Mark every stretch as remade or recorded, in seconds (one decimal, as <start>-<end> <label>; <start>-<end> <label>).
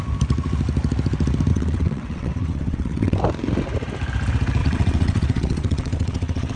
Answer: 0.0-1.5 recorded; 1.5-3.2 remade; 3.2-4.6 recorded; 4.6-6.6 remade